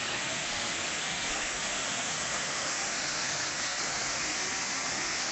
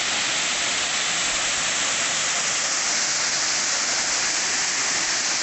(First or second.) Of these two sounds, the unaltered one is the second